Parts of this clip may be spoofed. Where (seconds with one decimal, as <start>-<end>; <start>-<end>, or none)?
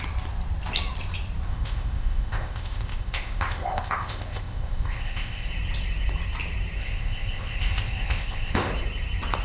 1.5-5.5; 6.8-8.7